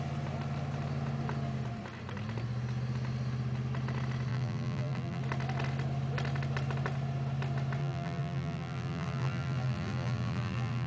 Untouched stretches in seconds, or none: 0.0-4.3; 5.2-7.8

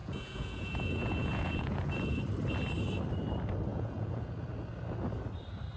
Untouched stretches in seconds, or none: 2.2-3.7; 4.3-5.8